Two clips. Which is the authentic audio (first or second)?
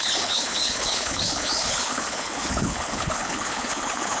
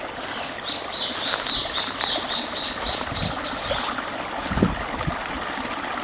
second